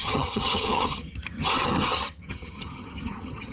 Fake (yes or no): yes